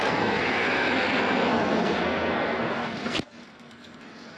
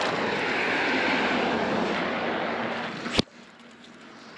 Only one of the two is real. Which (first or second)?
second